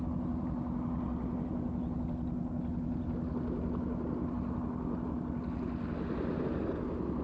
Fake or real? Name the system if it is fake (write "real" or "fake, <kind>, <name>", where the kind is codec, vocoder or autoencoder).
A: real